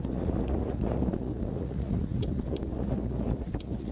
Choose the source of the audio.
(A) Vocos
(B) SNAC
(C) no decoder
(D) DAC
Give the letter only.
A